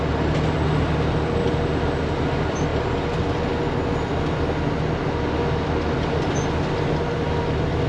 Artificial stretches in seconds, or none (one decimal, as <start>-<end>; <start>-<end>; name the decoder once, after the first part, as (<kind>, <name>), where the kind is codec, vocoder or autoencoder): none